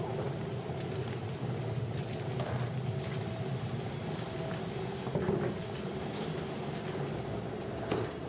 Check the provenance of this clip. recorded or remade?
recorded